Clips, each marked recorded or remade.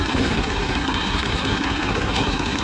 remade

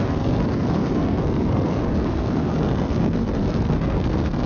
remade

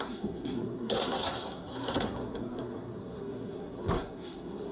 remade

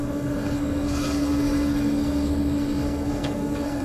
remade